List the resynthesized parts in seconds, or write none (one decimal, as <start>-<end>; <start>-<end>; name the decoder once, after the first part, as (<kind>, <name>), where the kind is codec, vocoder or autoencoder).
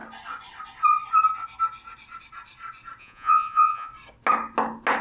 3.0-3.9 (vocoder, Vocos)